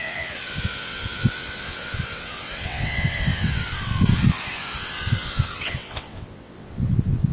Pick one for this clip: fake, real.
fake